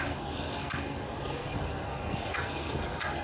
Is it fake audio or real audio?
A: fake